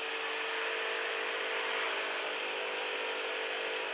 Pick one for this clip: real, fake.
real